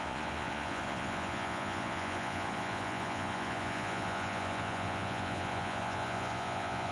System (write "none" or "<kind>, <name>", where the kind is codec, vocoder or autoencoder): vocoder, Vocos